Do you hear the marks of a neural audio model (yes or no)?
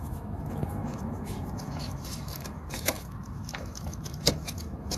yes